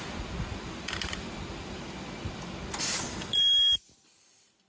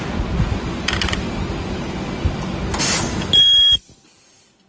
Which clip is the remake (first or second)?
first